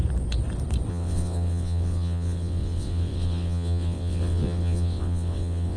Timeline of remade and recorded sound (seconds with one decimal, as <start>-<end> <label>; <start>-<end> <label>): 0.0-0.9 recorded; 0.9-5.8 remade